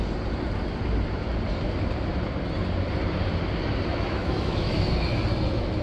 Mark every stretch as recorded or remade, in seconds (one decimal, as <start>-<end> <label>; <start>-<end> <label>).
0.0-3.9 recorded; 3.9-4.8 remade; 4.8-5.8 recorded